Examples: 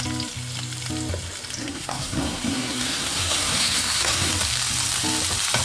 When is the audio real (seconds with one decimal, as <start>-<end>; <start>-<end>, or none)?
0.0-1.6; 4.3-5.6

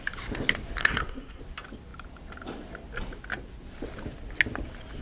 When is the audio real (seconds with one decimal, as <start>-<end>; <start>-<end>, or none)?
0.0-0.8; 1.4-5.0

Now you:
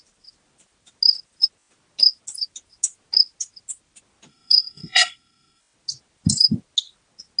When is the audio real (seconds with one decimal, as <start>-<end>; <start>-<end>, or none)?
0.0-4.3; 5.6-7.4

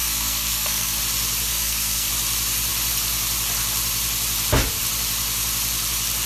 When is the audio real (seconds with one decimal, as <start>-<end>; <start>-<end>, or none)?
1.0-1.5; 2.1-6.3

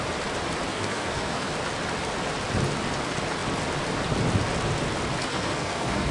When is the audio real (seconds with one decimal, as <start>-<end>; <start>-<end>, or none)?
0.0-0.7; 1.5-5.3

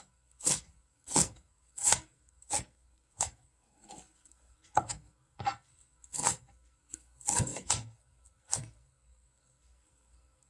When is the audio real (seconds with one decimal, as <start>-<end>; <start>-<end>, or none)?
none

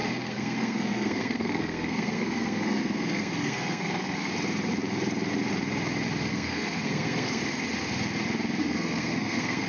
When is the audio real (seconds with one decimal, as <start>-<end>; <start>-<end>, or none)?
4.3-6.3; 7.4-8.6